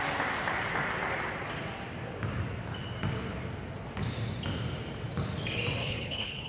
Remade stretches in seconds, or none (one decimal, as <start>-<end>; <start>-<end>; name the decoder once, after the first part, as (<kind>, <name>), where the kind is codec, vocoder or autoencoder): 5.8-6.5 (codec, HILCodec)